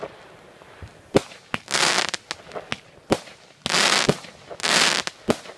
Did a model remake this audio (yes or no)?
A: no